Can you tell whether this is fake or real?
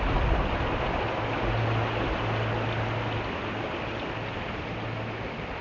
real